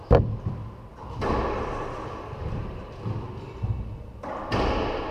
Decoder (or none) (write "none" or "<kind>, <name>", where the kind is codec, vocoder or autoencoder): none